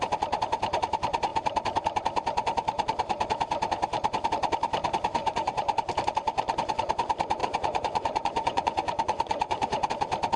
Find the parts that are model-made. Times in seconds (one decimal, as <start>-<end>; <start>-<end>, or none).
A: 5.2-5.9; 7.4-9.9